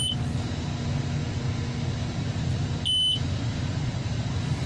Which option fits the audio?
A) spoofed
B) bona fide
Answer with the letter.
B